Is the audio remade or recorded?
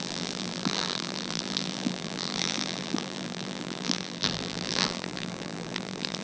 remade